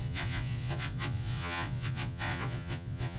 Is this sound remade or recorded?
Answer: remade